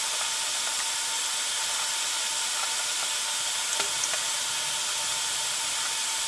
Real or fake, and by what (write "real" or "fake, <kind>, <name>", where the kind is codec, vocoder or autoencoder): real